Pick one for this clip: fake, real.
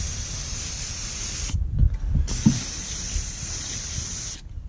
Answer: real